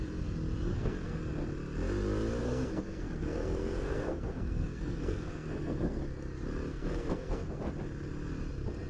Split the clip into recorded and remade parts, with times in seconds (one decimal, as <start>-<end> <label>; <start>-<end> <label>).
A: 0.0-0.7 recorded; 0.7-1.2 remade; 1.2-2.4 recorded; 2.4-6.0 remade; 6.0-6.7 recorded; 6.7-7.6 remade; 7.6-8.9 recorded